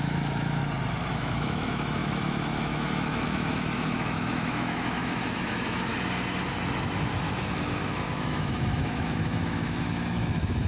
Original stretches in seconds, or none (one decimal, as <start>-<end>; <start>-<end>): 0.6-1.1; 5.9-7.9